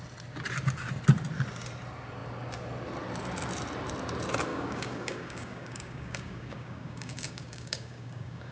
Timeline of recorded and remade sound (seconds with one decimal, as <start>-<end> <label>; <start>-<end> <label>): 0.0-4.5 recorded; 4.5-8.5 remade